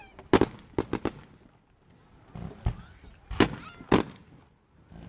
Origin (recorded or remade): recorded